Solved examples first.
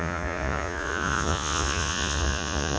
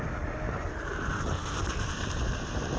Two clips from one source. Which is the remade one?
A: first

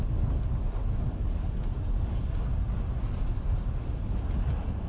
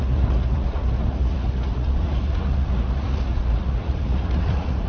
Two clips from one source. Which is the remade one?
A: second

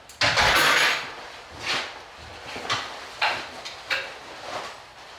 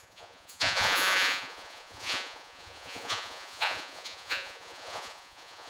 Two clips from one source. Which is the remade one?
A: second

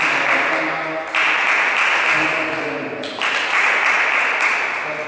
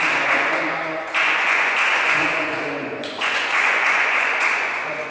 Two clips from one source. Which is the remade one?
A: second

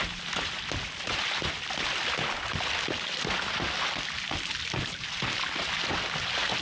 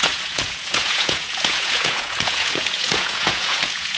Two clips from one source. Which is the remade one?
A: second